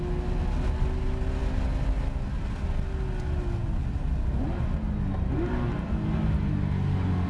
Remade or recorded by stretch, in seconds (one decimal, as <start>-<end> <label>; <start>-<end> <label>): 0.0-7.3 recorded